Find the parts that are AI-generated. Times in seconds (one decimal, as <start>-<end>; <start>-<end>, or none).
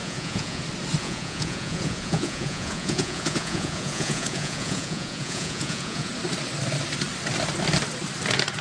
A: 0.0-0.6; 1.0-6.1